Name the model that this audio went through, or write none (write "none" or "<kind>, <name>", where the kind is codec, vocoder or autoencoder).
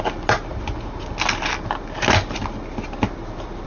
none